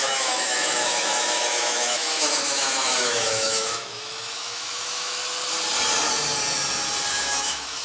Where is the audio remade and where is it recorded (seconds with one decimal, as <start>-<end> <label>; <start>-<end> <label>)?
0.0-5.2 remade; 5.2-7.1 recorded; 7.1-7.8 remade